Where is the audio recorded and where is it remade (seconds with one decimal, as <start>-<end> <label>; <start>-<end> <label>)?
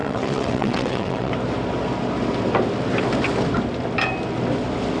0.0-1.3 remade; 1.3-5.0 recorded